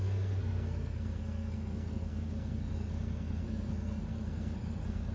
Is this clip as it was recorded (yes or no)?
no